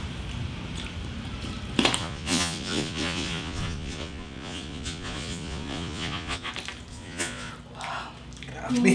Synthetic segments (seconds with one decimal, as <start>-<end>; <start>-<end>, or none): 2.0-6.5; 6.9-7.5